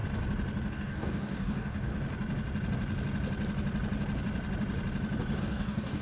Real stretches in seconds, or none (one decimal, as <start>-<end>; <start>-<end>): 0.0-0.7; 1.9-5.4